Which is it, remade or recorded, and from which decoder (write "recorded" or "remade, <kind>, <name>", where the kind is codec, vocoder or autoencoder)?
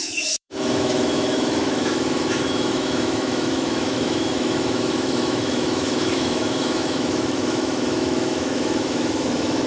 remade, autoencoder, DAC-VAE